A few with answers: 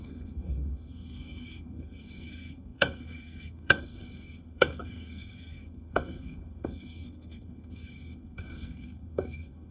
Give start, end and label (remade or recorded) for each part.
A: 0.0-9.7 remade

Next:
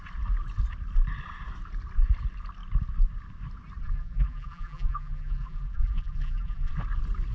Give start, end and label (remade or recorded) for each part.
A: 0.0-3.8 recorded; 3.8-6.7 remade; 6.7-7.3 recorded

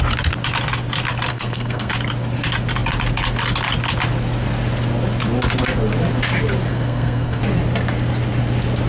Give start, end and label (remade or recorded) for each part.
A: 0.0-1.3 recorded; 1.3-1.9 remade; 1.9-6.7 recorded; 6.7-7.4 remade; 7.4-8.9 recorded